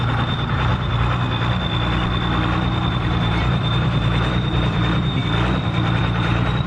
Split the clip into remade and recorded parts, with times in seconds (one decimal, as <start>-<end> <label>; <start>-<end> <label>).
0.0-0.7 remade; 0.7-2.9 recorded; 2.9-5.2 remade; 5.2-6.0 recorded; 6.0-6.7 remade